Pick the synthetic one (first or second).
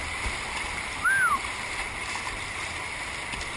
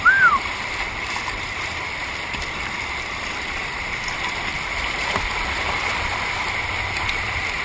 second